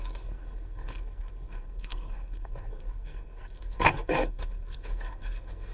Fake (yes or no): yes